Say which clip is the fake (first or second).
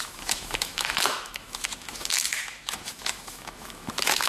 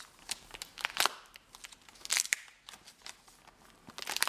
first